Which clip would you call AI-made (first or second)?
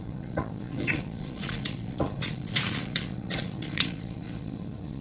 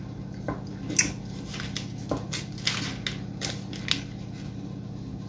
first